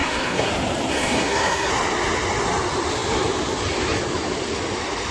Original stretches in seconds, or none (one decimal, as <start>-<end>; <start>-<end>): 0.5-0.9; 1.7-5.1